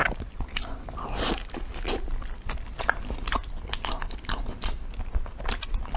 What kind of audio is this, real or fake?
real